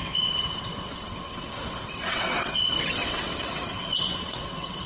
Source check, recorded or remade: remade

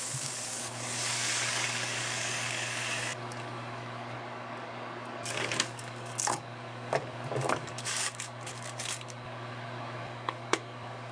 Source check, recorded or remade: remade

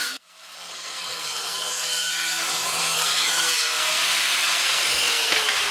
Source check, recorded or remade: remade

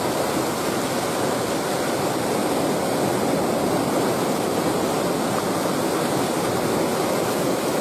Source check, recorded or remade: recorded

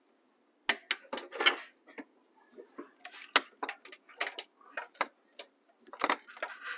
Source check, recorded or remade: recorded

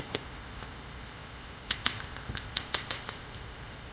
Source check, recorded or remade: remade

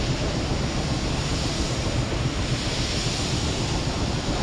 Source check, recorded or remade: recorded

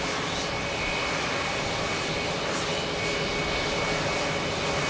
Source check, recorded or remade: recorded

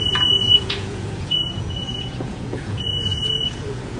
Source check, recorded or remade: remade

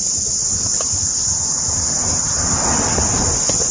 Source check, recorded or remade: recorded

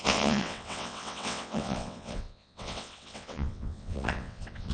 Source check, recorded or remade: remade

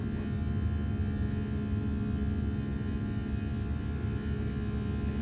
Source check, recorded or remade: recorded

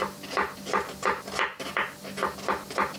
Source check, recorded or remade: recorded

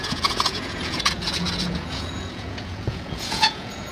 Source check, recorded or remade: remade